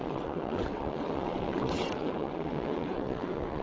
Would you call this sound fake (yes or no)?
yes